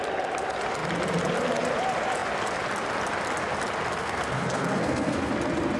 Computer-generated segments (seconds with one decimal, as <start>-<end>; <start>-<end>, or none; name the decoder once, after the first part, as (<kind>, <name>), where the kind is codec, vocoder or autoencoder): 4.0-5.3 (codec, SNAC)